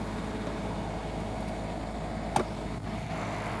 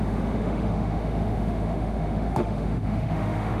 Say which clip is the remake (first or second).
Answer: second